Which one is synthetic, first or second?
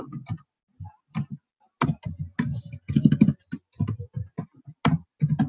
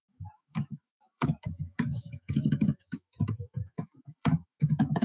second